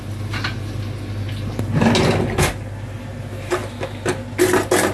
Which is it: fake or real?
real